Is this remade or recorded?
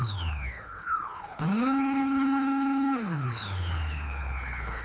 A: remade